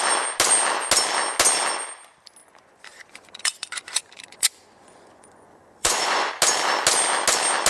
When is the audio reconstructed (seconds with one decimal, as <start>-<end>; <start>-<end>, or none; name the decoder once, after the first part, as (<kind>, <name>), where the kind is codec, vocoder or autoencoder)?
2.4-6.3 (vocoder, Vocos)